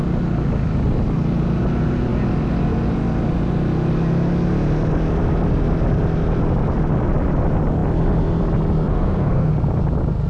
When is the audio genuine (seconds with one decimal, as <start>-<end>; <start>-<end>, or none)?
0.0-8.9; 9.5-10.3